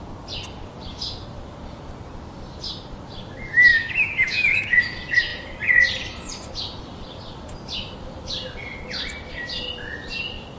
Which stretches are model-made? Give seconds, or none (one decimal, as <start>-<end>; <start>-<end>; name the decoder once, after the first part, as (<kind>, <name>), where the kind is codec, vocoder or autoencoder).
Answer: 3.7-4.8 (autoencoder, DAC-VAE)